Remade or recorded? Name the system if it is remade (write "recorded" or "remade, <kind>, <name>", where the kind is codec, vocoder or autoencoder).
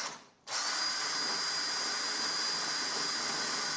recorded